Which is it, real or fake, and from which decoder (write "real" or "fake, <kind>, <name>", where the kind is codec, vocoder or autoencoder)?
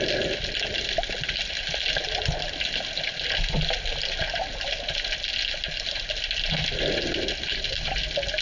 real